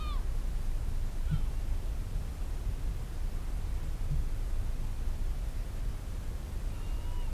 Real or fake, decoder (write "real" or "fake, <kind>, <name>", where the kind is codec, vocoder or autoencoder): real